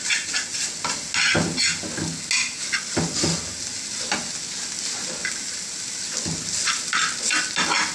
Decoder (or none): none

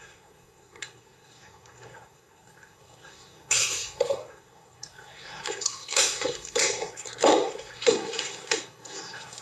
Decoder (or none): codec, SNAC